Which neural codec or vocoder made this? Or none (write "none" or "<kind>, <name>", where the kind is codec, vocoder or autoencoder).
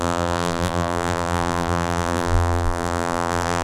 vocoder, BigVGAN v2